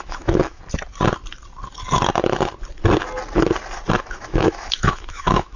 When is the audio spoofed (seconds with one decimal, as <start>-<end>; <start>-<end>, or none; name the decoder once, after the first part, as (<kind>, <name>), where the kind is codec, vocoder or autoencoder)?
0.0-0.6 (autoencoder, DAC-VAE); 4.0-5.6